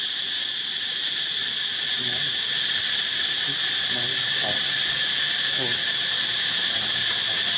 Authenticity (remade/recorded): recorded